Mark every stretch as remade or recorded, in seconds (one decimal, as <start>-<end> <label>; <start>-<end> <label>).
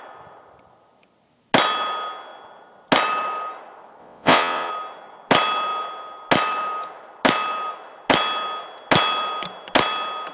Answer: 0.0-4.0 recorded; 4.0-4.7 remade; 4.7-10.3 recorded